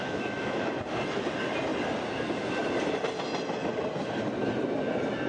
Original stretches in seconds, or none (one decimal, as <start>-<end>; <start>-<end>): 0.7-5.3